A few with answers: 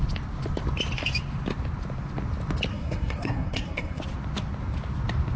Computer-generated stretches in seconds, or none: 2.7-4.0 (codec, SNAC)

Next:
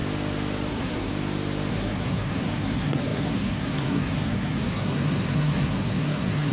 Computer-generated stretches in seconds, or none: 0.7-1.1 (codec, SNAC); 1.7-6.5

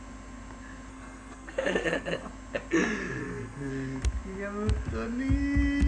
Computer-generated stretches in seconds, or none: 0.9-2.3 (codec, SNAC); 3.2-3.7

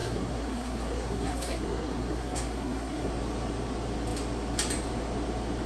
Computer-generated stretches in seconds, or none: 0.0-3.1 (codec, SNAC)